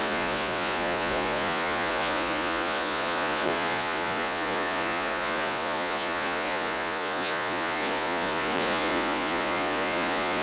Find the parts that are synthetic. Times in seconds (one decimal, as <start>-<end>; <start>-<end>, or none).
0.0-10.4